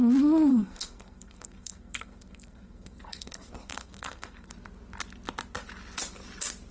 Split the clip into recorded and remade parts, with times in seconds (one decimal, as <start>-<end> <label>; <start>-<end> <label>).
0.0-0.5 recorded; 0.5-4.5 remade; 4.5-6.7 recorded